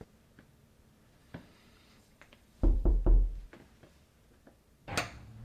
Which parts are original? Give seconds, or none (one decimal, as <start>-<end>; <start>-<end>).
0.0-1.2; 2.9-5.4